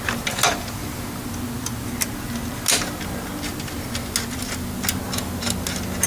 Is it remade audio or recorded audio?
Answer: recorded